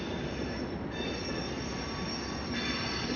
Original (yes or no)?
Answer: yes